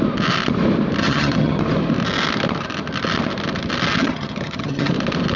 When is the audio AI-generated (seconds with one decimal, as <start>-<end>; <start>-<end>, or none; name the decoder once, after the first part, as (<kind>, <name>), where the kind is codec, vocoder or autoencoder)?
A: 1.0-1.6 (vocoder, HiFi-GAN); 4.0-4.9